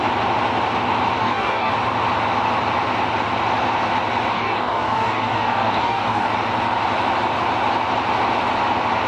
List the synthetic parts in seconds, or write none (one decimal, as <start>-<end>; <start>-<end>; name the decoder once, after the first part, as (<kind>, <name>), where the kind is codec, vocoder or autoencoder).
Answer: 1.2-1.7 (codec, DAC); 4.3-6.3